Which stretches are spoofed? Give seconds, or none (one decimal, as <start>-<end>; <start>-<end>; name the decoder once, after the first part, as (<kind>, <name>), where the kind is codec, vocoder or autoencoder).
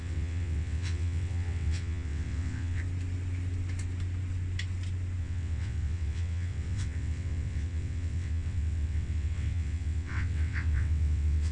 0.0-2.8 (vocoder, WaveNeXt); 5.2-11.5